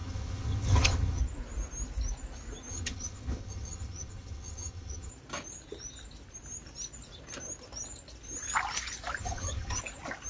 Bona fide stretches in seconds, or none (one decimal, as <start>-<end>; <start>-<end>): 1.2-2.7; 5.1-9.2; 9.8-10.3

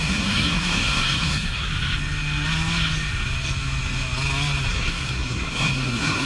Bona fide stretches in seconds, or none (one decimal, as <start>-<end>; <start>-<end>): 1.7-4.7

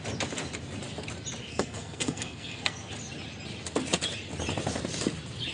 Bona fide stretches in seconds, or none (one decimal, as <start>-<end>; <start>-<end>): 0.0-1.4; 2.9-5.5

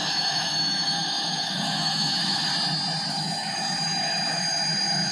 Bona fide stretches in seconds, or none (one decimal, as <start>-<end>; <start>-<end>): 2.5-3.1